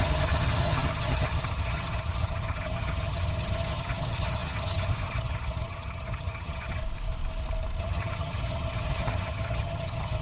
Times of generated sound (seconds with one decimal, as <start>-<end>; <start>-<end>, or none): 0.0-6.8; 7.8-10.2